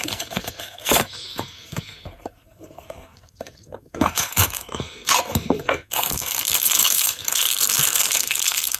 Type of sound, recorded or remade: remade